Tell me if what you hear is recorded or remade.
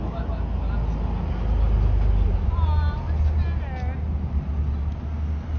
recorded